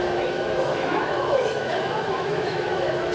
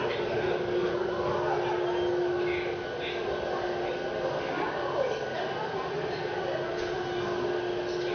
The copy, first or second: first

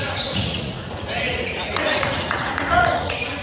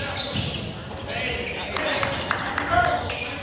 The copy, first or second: first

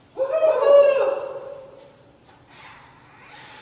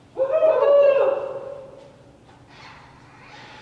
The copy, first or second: first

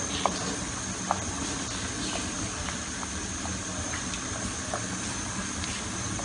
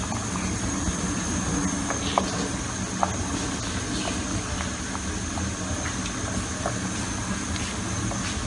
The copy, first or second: first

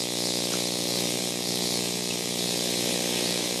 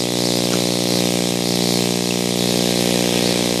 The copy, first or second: first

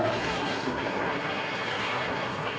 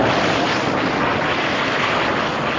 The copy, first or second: first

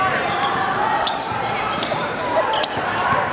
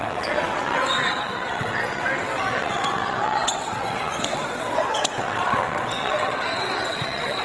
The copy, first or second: second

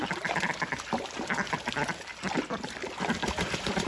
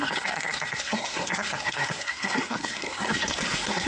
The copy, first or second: second